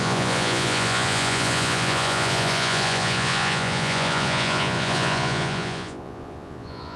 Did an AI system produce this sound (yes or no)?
yes